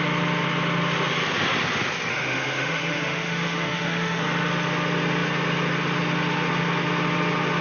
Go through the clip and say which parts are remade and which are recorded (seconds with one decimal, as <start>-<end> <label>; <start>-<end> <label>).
0.0-2.1 recorded; 2.1-4.2 remade; 4.2-7.6 recorded